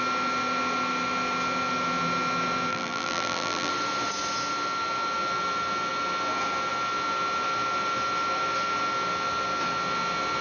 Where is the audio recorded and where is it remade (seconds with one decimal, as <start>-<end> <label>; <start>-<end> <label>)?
0.0-2.7 recorded; 2.7-3.7 remade; 3.7-10.4 recorded

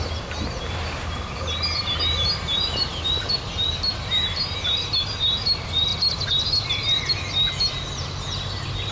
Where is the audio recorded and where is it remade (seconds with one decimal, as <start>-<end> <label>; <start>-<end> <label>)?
0.0-8.9 recorded

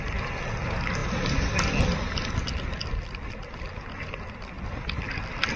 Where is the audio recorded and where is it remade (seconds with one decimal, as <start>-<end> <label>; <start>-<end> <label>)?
0.0-5.6 recorded

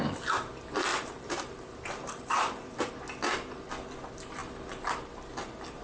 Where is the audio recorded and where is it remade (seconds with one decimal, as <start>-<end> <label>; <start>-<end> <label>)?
0.0-0.5 remade; 0.5-0.9 recorded; 0.9-2.9 remade; 2.9-5.8 recorded

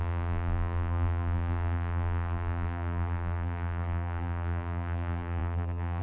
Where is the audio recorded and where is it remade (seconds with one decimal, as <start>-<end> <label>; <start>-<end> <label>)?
0.0-6.0 remade

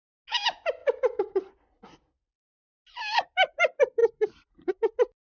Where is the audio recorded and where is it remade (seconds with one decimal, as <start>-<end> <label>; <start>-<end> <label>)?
0.0-0.8 recorded; 0.8-1.5 remade; 1.5-4.0 recorded; 4.0-4.7 remade; 4.7-5.3 recorded

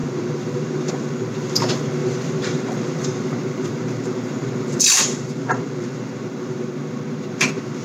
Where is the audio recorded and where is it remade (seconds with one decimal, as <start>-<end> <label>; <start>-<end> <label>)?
0.0-1.1 remade; 1.1-2.0 recorded; 2.0-6.7 remade; 6.7-7.8 recorded